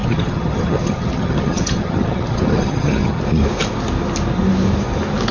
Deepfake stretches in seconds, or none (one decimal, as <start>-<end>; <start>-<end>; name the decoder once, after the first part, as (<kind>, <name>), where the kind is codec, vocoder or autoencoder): 0.0-3.2 (vocoder, HiFi-GAN)